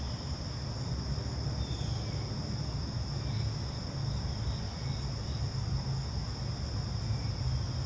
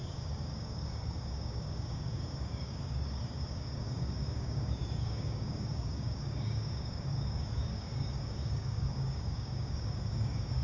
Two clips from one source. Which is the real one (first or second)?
first